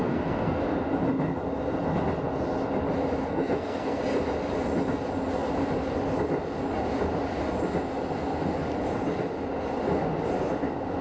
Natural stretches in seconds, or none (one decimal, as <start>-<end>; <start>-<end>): 0.6-3.2; 4.0-11.0